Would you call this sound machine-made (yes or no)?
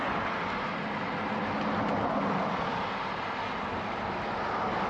no